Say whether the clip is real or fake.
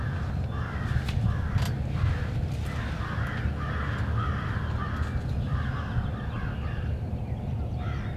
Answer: real